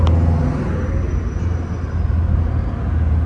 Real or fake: real